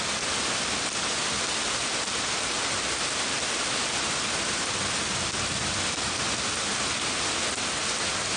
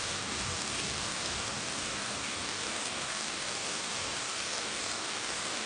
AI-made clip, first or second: second